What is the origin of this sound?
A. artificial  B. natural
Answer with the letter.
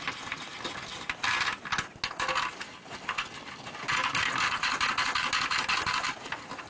B